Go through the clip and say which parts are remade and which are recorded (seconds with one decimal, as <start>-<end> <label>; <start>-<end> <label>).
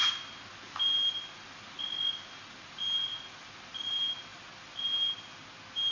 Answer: 0.0-5.9 recorded